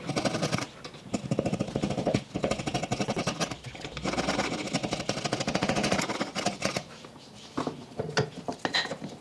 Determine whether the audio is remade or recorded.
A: recorded